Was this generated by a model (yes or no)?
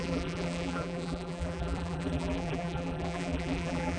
yes